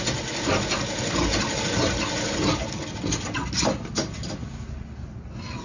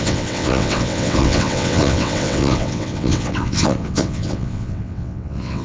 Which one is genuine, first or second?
first